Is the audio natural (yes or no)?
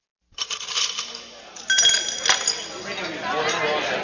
yes